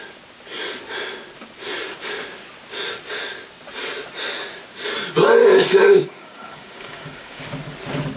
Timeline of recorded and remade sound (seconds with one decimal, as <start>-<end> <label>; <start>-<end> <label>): 0.0-5.4 recorded; 5.4-7.4 remade; 7.4-8.2 recorded